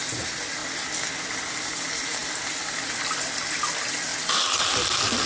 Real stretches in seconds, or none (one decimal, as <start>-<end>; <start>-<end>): 0.0-5.3